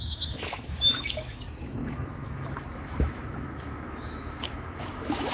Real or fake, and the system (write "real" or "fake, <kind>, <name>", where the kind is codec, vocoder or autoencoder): fake, autoencoder, DAC-VAE